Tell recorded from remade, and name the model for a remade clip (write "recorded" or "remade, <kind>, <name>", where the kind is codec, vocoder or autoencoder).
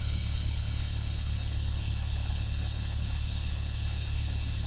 remade, codec, HILCodec